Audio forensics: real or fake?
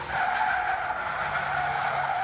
real